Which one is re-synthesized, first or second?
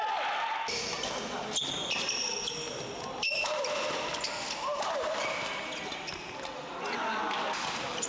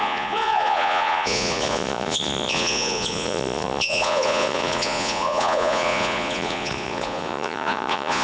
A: second